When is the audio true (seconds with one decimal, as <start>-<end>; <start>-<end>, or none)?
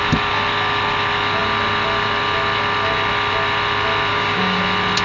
0.0-4.1; 4.6-5.0